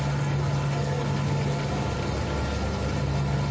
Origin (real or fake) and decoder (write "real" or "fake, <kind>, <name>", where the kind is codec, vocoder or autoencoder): real